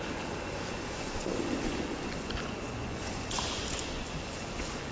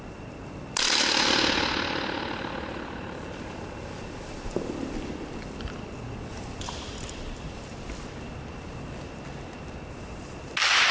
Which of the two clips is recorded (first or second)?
second